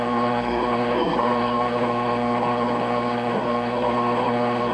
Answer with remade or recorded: remade